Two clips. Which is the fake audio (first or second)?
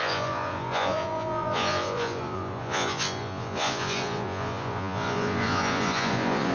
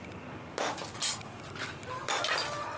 first